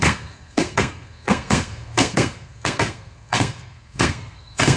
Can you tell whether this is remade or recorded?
remade